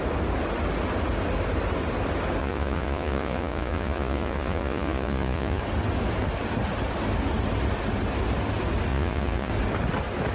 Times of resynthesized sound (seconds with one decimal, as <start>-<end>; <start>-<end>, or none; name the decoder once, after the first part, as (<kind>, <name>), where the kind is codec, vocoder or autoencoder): 2.4-5.6 (vocoder, Vocos); 8.9-9.5